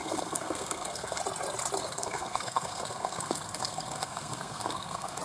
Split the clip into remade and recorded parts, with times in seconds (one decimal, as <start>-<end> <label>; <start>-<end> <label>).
0.0-1.2 remade; 1.2-1.8 recorded; 1.8-5.2 remade